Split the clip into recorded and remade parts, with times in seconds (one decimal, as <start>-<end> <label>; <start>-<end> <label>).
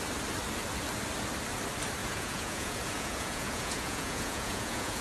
0.0-2.0 recorded; 2.0-5.0 remade